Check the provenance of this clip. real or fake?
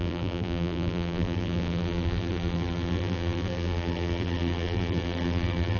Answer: fake